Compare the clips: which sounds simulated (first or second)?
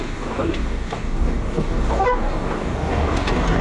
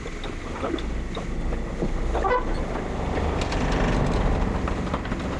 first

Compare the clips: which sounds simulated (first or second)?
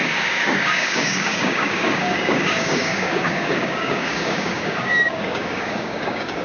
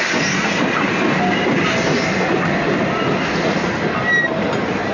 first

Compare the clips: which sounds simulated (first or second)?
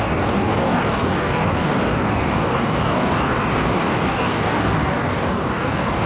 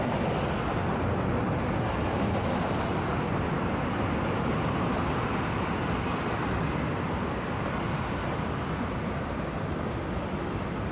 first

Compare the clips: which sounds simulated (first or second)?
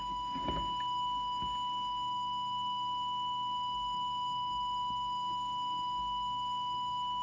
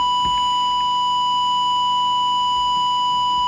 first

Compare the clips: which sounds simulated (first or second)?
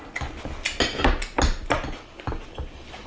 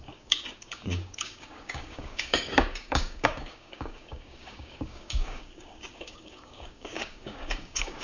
second